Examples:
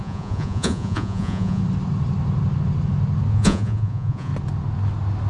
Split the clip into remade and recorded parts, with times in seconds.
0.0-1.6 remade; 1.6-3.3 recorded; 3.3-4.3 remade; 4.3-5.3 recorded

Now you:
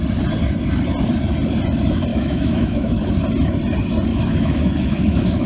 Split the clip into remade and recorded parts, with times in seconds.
0.0-2.1 recorded; 2.1-3.1 remade; 3.1-4.1 recorded; 4.1-5.5 remade

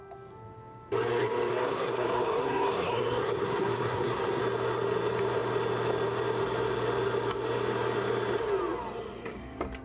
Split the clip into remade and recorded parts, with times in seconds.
0.0-1.5 recorded; 1.5-4.4 remade; 4.4-9.8 recorded

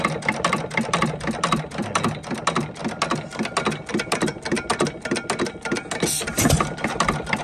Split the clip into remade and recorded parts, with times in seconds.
0.0-7.4 recorded